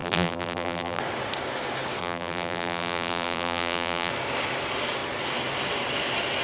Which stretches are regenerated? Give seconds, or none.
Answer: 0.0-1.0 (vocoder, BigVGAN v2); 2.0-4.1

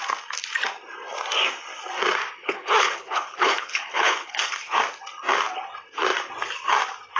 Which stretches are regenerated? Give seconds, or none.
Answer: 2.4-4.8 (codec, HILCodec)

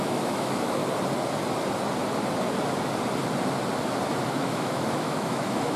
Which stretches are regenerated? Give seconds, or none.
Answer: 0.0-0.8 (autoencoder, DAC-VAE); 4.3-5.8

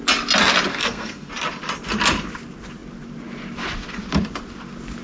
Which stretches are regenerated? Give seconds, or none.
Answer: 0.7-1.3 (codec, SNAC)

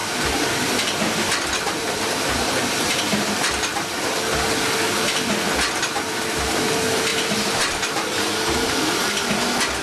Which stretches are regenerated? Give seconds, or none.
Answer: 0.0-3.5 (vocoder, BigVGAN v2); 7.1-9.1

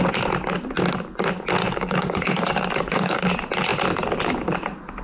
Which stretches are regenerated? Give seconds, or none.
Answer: 1.6-3.2 (codec, DAC)